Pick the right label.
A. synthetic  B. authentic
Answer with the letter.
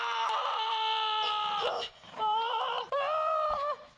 A